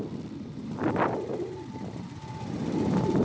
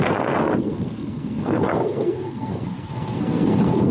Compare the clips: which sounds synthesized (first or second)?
second